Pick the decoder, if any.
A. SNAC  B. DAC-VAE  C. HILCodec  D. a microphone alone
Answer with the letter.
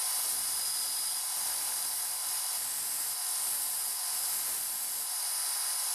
D